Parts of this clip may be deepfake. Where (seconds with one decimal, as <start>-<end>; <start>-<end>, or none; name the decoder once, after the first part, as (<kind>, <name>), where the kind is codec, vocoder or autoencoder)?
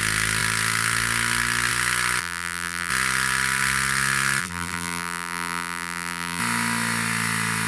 2.2-2.9 (vocoder, BigVGAN v2); 4.4-6.4